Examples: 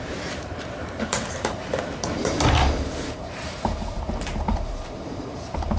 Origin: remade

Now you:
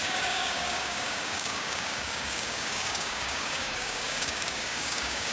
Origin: remade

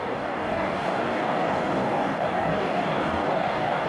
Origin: remade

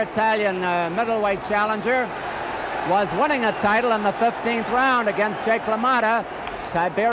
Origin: recorded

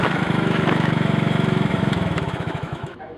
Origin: remade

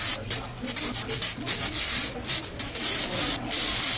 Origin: recorded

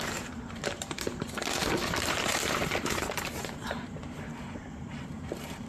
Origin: remade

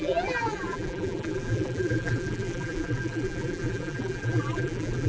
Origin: remade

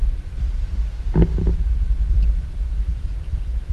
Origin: remade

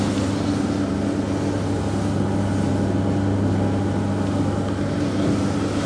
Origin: recorded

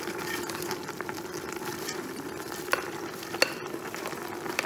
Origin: recorded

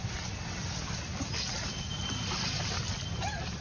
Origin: recorded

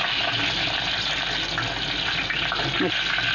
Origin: recorded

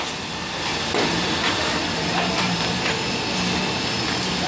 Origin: recorded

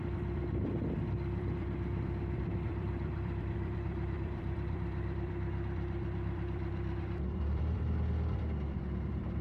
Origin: remade